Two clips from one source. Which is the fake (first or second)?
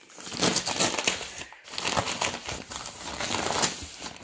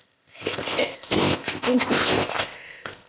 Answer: second